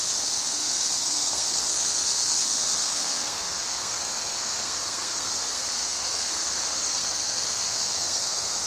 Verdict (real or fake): fake